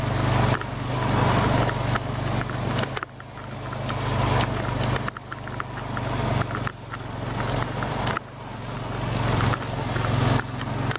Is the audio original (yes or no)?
yes